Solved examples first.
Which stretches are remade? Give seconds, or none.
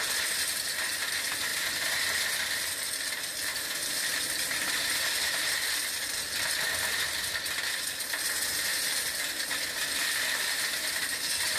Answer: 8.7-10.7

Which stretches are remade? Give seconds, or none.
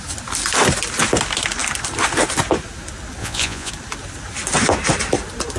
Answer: 3.2-3.7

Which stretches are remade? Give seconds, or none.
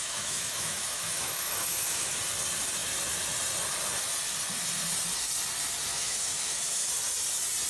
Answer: 0.0-2.2; 5.9-6.9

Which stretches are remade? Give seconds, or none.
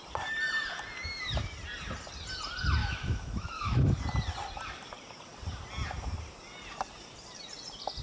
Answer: 2.8-4.0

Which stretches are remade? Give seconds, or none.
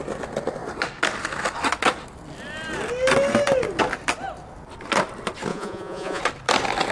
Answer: 5.5-6.2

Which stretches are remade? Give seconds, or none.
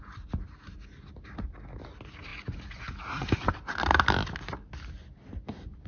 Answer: none